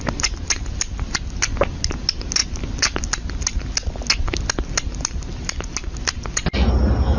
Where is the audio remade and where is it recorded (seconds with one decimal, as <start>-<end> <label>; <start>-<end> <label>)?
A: 0.0-7.2 recorded